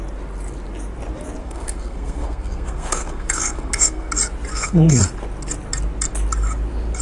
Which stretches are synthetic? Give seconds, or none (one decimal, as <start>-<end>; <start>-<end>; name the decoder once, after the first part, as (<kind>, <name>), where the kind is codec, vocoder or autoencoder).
1.4-4.1 (codec, SNAC); 4.5-5.0

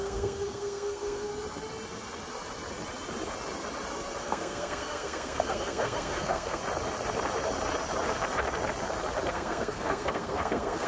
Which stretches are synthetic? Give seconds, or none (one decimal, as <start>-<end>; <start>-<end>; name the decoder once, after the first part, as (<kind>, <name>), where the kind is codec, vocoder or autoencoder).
0.0-1.3 (codec, SNAC); 4.2-6.6; 9.3-10.9

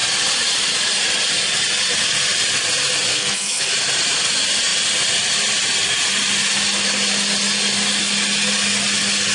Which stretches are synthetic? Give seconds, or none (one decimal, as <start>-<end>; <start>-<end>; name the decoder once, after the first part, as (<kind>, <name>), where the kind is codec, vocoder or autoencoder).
3.1-3.7 (codec, SNAC)

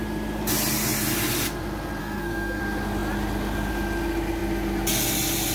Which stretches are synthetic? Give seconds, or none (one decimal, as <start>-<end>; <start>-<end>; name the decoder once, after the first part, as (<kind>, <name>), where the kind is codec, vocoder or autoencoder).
2.0-2.6 (codec, SNAC)

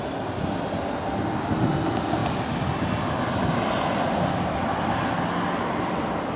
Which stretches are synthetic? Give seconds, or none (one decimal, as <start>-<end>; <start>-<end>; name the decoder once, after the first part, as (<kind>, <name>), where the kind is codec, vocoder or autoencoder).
none

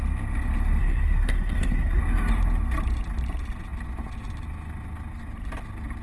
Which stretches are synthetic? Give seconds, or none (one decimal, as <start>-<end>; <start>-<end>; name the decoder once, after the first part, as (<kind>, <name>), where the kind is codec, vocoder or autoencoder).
0.8-2.0 (codec, SNAC)